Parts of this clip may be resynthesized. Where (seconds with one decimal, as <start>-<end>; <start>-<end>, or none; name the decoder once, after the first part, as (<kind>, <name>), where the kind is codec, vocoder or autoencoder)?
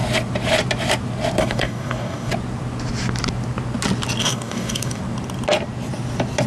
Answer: 1.4-2.3 (codec, DAC); 4.2-5.0